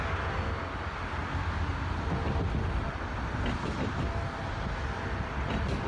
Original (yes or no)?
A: yes